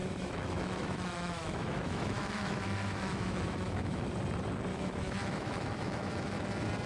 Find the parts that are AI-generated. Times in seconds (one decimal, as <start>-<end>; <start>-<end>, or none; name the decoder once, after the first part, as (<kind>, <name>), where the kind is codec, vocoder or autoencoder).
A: 0.0-4.1 (autoencoder, DAC-VAE); 4.7-6.4